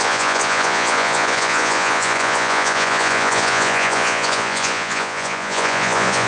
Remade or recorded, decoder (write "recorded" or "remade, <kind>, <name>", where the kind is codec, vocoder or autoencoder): remade, vocoder, Vocos